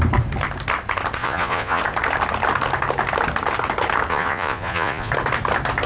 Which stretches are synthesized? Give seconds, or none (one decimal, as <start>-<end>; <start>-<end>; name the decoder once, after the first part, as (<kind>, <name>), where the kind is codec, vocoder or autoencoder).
1.2-1.8 (vocoder, Vocos); 4.1-5.1